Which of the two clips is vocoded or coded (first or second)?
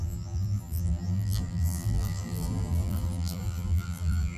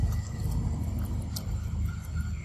first